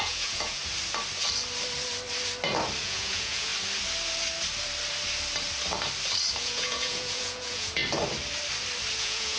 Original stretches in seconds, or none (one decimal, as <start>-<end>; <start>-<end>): 0.6-2.8; 3.5-6.4; 7.8-9.0